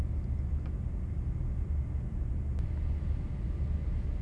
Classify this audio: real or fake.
real